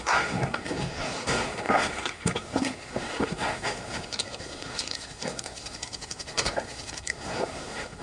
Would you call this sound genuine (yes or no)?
no